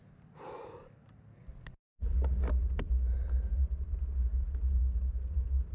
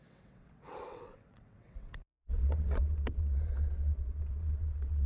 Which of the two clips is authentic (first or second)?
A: first